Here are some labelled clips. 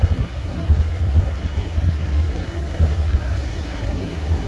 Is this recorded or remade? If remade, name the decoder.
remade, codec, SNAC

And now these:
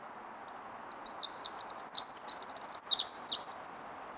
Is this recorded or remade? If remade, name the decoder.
recorded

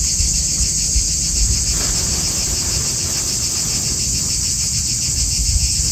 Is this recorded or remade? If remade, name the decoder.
recorded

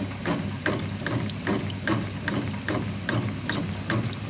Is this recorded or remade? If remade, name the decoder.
recorded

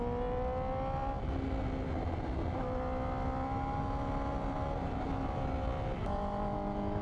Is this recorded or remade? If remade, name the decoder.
recorded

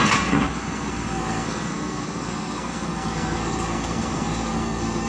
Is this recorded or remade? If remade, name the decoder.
remade, codec, SNAC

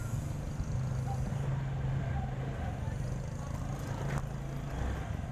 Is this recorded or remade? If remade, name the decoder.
recorded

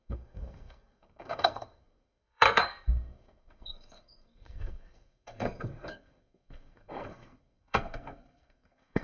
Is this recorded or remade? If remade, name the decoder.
remade, codec, SNAC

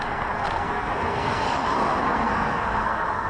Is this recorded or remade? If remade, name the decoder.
remade, codec, SNAC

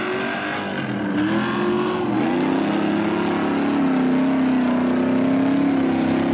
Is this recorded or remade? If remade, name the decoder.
recorded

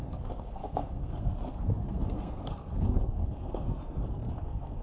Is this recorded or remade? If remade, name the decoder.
remade, codec, SNAC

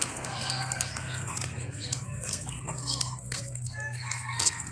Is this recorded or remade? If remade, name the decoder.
remade, codec, SNAC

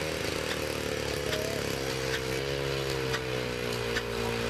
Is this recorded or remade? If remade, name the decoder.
recorded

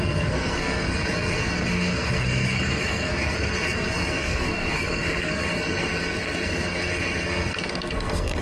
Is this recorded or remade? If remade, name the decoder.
remade, codec, SNAC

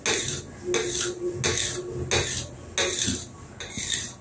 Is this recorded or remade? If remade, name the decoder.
recorded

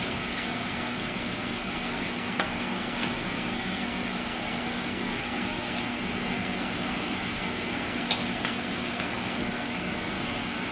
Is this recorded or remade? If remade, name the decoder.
remade, codec, SNAC